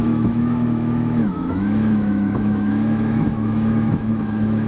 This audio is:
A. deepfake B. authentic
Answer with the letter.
A